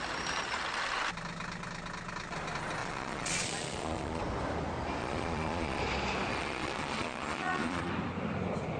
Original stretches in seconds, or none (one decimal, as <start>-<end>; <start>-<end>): 0.0-2.8; 4.2-5.0; 5.8-6.3; 7.9-8.8